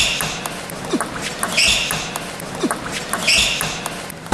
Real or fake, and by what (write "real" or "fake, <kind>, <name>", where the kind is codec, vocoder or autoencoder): real